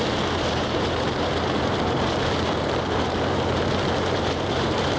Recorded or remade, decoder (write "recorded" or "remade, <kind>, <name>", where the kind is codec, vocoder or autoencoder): remade, vocoder, BigVGAN v2